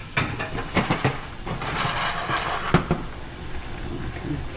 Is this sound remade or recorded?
recorded